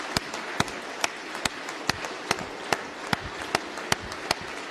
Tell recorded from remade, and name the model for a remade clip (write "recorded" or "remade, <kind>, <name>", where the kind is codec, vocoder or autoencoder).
recorded